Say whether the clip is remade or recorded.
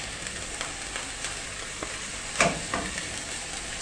remade